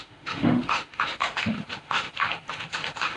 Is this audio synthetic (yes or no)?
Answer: yes